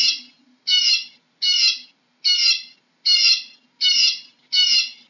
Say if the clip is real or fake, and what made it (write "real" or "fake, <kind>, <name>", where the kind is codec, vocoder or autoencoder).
real